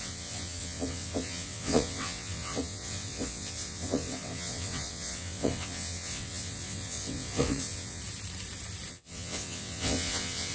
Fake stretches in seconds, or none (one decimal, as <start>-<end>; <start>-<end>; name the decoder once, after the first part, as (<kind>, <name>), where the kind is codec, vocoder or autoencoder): 0.0-8.0 (vocoder, WaveNeXt); 8.9-10.5